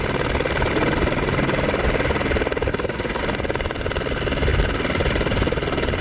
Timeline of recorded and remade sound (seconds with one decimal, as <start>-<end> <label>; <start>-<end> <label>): 0.0-2.7 recorded; 2.7-3.2 remade; 3.2-6.0 recorded

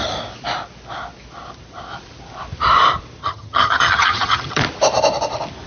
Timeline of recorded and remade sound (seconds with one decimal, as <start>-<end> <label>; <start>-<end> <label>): 0.0-3.2 recorded; 3.2-4.6 remade; 4.6-5.7 recorded

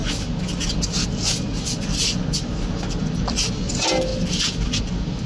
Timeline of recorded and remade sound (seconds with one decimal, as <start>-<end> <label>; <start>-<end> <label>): 0.0-3.2 recorded; 3.2-4.1 remade; 4.1-4.8 recorded; 4.8-5.3 remade

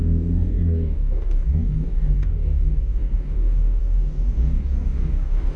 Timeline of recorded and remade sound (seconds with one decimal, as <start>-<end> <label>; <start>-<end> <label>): 0.0-5.6 remade

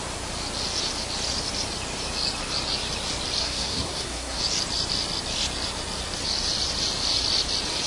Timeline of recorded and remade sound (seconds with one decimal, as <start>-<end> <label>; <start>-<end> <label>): 0.0-3.4 recorded; 3.4-4.4 remade; 4.4-7.9 recorded

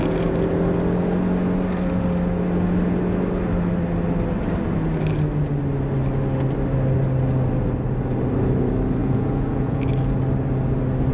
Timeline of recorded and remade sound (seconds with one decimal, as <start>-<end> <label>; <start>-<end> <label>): 0.0-9.0 recorded; 9.0-9.9 remade; 9.9-11.1 recorded